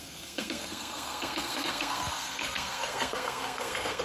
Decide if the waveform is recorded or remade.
remade